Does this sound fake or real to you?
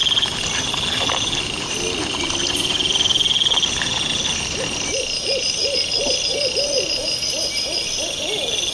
real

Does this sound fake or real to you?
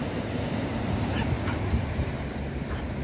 fake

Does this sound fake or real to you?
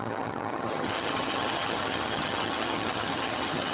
fake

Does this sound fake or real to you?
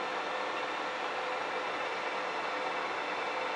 real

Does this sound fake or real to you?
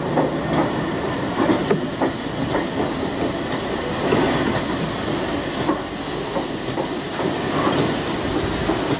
real